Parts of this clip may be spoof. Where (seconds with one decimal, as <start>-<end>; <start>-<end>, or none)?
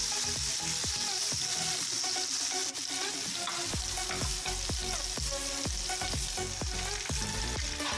none